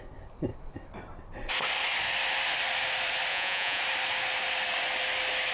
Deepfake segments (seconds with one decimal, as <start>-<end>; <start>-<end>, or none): 3.3-3.8